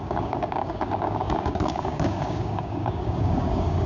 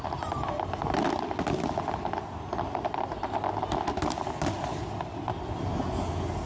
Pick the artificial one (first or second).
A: first